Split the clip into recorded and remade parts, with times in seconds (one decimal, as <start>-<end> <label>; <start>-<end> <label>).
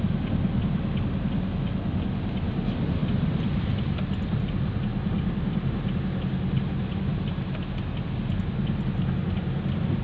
0.0-10.0 recorded